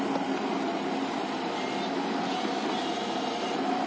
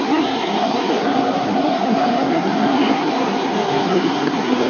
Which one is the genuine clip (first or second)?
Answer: first